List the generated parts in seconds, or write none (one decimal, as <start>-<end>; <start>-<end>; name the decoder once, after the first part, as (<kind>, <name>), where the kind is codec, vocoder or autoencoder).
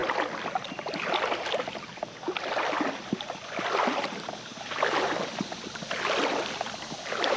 none